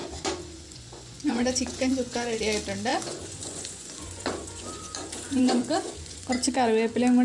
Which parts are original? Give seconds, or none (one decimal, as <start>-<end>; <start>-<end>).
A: 2.4-2.9; 6.3-7.2